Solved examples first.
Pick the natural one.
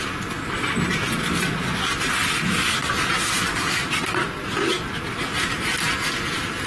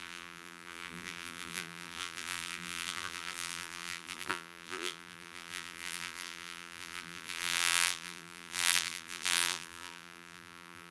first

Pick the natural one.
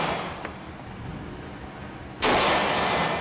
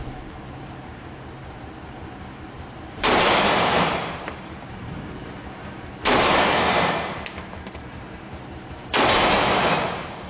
first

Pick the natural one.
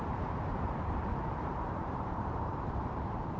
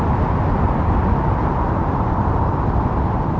second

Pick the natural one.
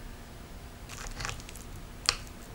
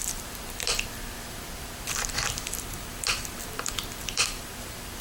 first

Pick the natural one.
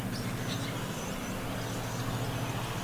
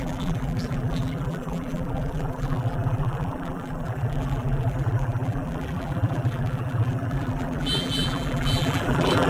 first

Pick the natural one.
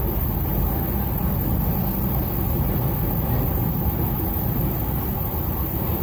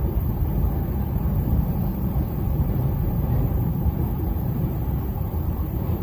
first